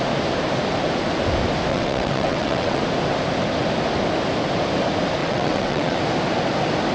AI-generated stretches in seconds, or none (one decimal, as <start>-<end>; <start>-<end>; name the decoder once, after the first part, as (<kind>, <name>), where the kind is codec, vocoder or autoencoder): 1.7-2.8 (vocoder, WaveNeXt); 5.2-6.0